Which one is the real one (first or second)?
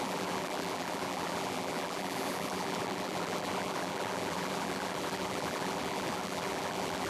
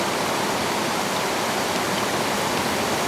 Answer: second